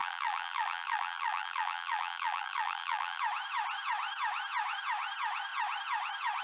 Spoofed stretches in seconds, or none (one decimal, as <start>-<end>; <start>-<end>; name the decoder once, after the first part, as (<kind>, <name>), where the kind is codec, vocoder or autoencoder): 0.0-3.2 (vocoder, BigVGAN v2)